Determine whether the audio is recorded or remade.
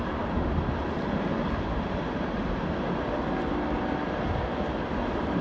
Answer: recorded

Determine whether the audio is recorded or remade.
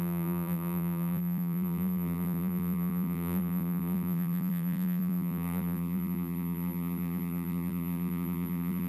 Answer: remade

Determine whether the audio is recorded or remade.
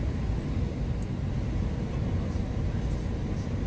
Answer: recorded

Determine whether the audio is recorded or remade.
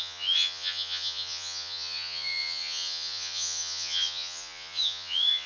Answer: remade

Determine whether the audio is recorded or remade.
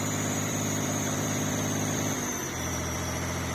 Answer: remade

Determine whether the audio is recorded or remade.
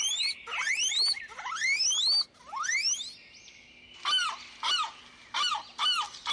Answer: recorded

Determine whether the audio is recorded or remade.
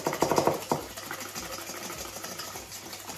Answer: recorded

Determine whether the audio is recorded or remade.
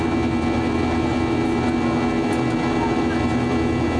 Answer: recorded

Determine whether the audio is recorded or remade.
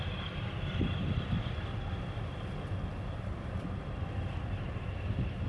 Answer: recorded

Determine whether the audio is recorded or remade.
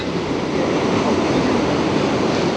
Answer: recorded